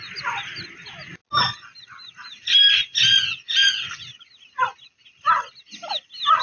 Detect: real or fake real